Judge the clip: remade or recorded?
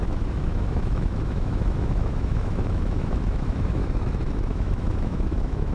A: remade